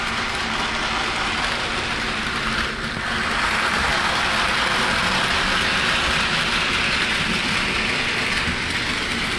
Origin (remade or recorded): recorded